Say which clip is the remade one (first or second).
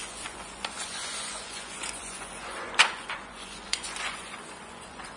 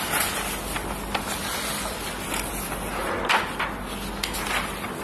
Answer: first